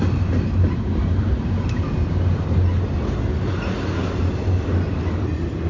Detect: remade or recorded recorded